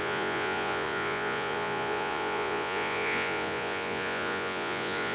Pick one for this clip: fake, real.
fake